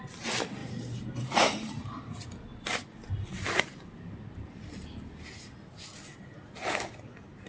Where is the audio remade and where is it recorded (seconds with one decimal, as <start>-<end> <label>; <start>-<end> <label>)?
0.0-0.6 recorded; 0.6-1.7 remade; 1.7-7.5 recorded